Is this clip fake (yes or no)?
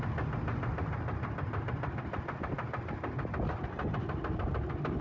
no